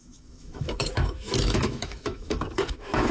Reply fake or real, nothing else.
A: fake